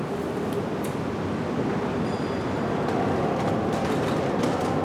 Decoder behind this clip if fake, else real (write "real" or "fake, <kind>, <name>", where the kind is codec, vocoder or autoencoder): real